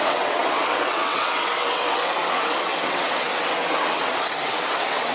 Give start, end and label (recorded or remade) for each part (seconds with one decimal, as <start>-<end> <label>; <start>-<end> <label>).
0.0-5.1 remade